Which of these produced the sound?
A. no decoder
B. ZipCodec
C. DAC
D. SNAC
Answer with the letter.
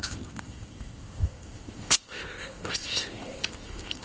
B